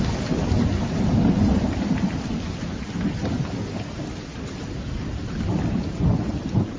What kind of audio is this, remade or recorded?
recorded